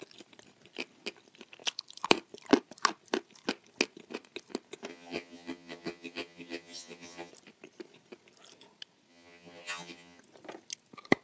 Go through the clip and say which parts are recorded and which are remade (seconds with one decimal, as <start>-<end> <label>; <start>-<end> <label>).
0.0-4.9 recorded; 4.9-7.3 remade; 7.3-9.1 recorded; 9.1-10.2 remade; 10.2-11.2 recorded

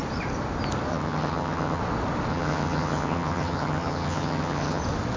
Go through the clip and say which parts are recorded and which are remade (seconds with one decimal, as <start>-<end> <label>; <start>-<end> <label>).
0.0-0.9 recorded; 0.9-1.8 remade; 1.8-2.3 recorded; 2.3-4.8 remade; 4.8-5.2 recorded

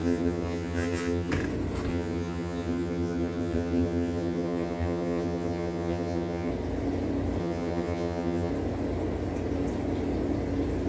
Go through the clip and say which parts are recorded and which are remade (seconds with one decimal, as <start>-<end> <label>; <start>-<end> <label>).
0.0-1.3 remade; 1.3-1.9 recorded; 1.9-6.5 remade; 6.5-7.4 recorded; 7.4-8.5 remade; 8.5-10.9 recorded

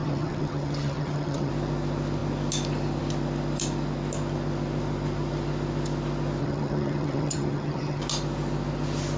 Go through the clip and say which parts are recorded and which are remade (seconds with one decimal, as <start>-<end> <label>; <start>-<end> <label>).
0.0-1.5 remade; 1.5-6.4 recorded; 6.4-8.0 remade; 8.0-9.2 recorded

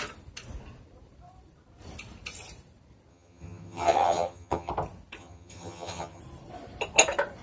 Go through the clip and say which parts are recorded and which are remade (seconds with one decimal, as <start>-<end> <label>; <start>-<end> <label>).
0.0-3.1 recorded; 3.1-4.7 remade; 4.7-5.2 recorded; 5.2-6.2 remade; 6.2-7.4 recorded

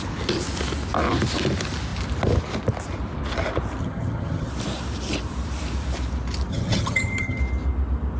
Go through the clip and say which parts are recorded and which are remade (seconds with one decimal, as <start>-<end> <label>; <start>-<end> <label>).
0.0-3.8 recorded; 3.8-4.5 remade; 4.5-6.5 recorded; 6.5-7.4 remade; 7.4-8.2 recorded

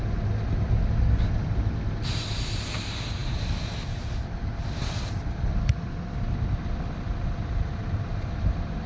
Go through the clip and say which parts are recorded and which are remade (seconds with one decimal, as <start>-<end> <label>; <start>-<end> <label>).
0.0-8.9 recorded

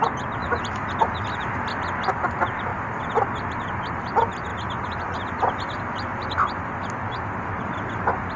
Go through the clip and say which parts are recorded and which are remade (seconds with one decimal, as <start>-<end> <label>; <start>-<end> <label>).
0.0-8.4 recorded